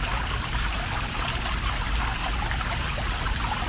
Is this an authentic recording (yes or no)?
yes